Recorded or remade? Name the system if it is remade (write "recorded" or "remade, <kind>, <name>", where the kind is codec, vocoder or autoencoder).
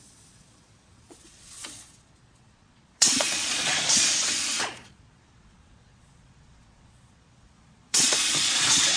remade, vocoder, Vocos